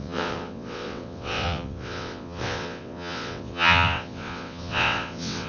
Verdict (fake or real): fake